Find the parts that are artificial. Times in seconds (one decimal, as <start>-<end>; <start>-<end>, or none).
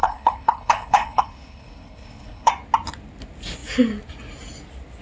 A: 0.0-2.5